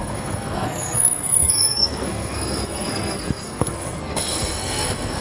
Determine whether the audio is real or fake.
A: fake